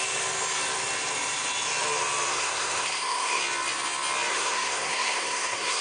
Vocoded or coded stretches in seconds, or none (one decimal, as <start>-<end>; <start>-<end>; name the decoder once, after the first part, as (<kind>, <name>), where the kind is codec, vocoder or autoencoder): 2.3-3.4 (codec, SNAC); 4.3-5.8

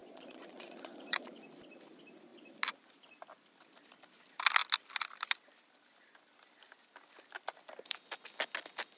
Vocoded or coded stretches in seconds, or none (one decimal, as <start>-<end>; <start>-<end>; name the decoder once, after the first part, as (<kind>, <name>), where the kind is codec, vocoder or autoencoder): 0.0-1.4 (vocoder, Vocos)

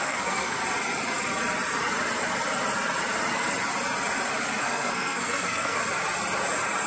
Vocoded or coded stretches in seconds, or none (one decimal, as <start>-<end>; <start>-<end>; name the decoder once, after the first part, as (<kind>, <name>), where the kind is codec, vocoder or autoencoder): 0.0-0.6 (codec, SNAC); 4.6-5.8